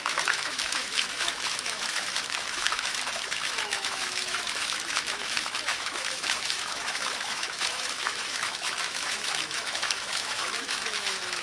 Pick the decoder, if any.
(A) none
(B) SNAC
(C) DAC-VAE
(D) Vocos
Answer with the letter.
C